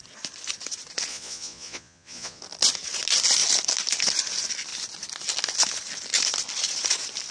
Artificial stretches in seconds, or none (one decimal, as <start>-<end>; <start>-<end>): 1.1-2.4